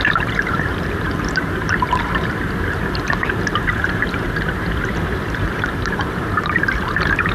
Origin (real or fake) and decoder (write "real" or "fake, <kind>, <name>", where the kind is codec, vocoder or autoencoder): fake, vocoder, BigVGAN v2